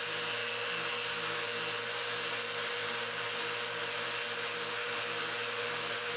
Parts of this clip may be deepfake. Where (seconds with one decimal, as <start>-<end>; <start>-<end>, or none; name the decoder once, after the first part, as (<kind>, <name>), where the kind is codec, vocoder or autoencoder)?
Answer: none